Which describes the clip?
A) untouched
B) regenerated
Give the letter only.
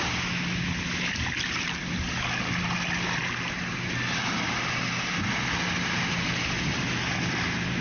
A